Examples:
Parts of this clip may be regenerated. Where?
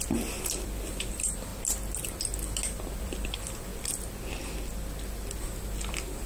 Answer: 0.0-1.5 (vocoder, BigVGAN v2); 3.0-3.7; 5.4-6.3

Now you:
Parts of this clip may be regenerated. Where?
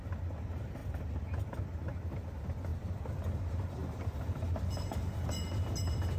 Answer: 0.8-1.6 (vocoder, BigVGAN v2); 2.7-3.2; 3.8-4.5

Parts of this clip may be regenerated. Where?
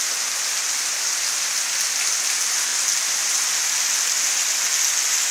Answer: none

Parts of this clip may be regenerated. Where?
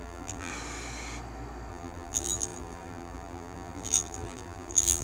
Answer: 0.0-0.5 (vocoder, BigVGAN v2); 1.7-5.0